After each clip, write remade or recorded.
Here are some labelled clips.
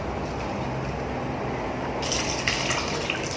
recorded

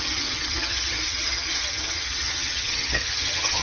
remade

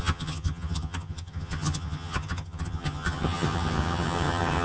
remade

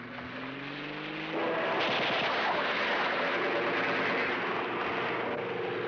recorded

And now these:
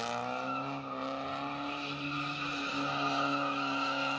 recorded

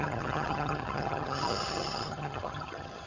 remade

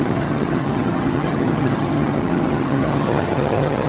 remade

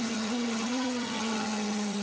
remade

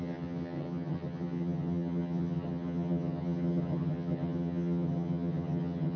remade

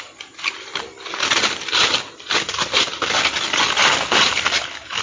recorded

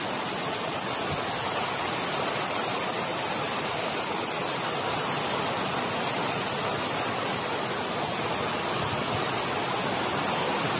recorded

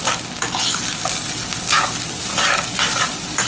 recorded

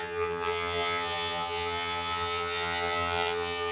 remade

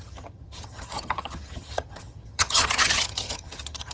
remade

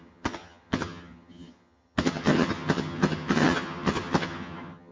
remade